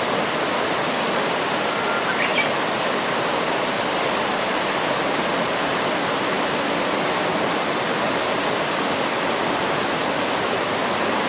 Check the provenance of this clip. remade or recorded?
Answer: recorded